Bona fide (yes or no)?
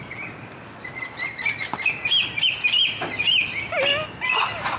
yes